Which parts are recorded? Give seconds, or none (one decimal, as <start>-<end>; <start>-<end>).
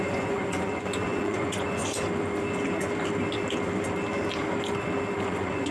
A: 1.8-5.2